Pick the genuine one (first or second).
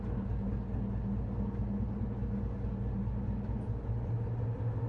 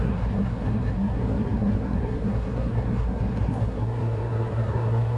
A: first